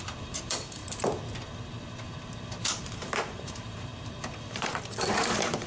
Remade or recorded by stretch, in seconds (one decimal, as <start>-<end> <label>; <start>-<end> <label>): 0.0-0.8 remade; 0.8-2.8 recorded; 2.8-3.9 remade; 3.9-4.4 recorded; 4.4-5.7 remade